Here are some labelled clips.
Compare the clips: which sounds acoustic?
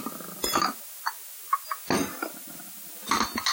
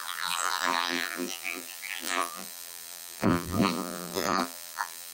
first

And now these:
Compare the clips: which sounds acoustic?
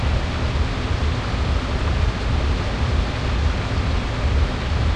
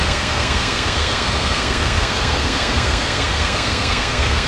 first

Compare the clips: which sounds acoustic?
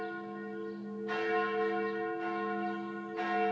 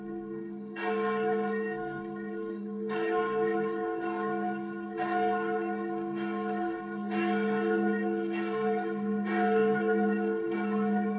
first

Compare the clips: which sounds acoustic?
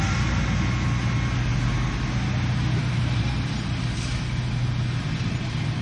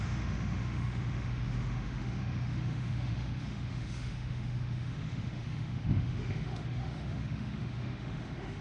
first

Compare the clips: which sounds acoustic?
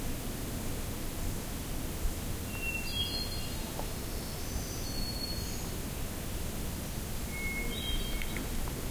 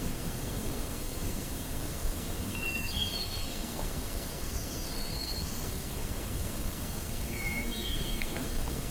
first